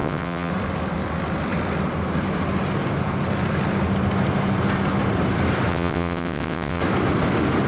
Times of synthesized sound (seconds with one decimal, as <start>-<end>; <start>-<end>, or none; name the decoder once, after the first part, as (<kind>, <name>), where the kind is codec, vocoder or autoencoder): 0.0-0.5 (vocoder, WaveNeXt); 5.7-6.8